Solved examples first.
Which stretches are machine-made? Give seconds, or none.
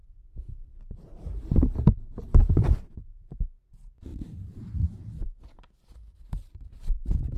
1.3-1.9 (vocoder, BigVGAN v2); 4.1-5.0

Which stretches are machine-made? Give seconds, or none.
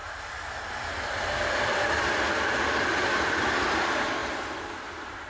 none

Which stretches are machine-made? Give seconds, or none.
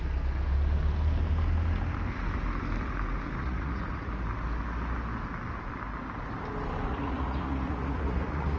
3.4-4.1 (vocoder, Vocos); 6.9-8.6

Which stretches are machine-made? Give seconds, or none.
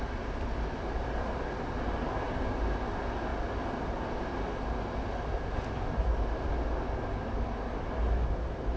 none